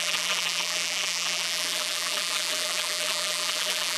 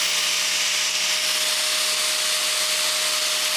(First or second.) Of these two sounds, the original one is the second